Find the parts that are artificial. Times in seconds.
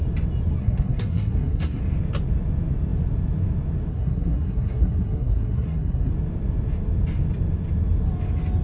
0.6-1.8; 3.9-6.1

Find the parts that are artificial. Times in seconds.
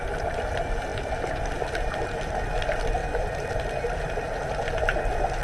none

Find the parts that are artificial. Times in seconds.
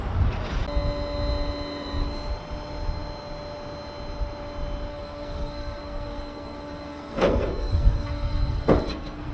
4.9-9.3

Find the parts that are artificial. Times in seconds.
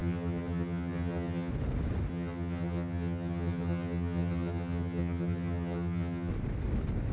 0.0-1.5; 2.1-6.3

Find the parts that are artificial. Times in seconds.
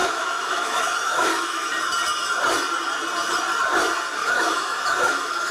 0.0-1.7; 4.2-5.5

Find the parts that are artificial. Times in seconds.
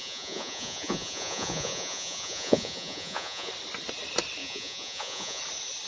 0.0-3.5; 4.4-5.4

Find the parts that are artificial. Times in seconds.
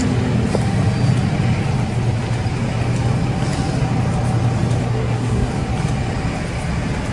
4.8-5.5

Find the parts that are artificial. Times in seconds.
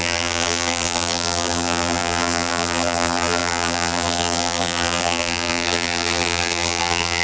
0.0-7.2